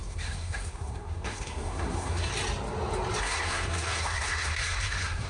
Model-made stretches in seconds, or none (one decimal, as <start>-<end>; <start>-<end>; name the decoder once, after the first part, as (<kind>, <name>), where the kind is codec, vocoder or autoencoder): 0.0-2.3 (codec, SNAC); 3.2-5.3